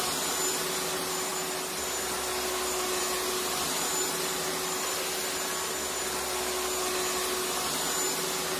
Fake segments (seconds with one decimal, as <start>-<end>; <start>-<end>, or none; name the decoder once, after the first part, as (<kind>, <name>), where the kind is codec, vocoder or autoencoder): none